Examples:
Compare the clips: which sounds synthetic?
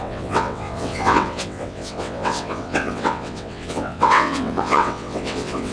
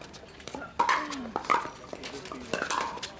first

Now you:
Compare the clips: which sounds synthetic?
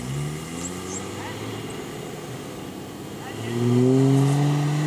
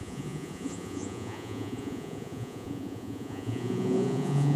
second